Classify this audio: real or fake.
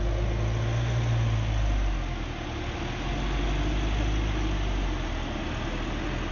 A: real